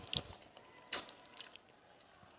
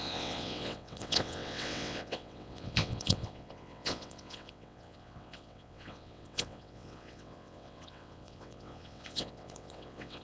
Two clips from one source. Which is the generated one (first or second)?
second